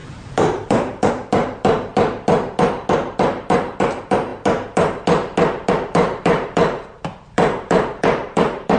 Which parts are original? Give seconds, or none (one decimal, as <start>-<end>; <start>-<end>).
1.9-3.8; 4.3-5.7